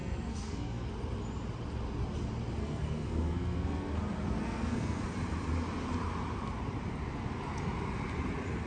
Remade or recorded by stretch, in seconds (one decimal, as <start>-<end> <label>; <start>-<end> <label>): 0.0-0.9 remade; 0.9-2.6 recorded; 2.6-3.9 remade; 3.9-4.4 recorded; 4.4-5.0 remade; 5.0-8.7 recorded